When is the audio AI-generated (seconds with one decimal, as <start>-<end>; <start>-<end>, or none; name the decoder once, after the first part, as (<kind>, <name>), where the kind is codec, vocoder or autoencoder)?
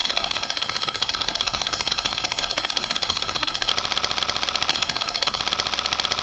0.0-3.7 (codec, SNAC); 4.7-5.4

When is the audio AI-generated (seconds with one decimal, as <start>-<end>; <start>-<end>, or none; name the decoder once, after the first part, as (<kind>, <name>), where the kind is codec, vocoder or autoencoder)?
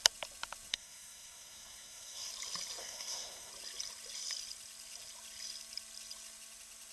0.7-2.3 (codec, SNAC); 2.8-3.5